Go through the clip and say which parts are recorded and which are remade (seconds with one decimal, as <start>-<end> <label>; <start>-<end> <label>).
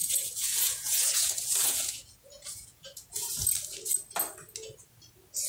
0.0-3.3 remade; 3.3-5.5 recorded